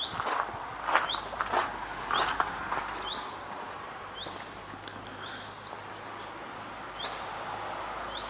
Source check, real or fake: real